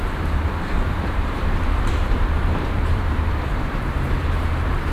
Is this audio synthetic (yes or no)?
yes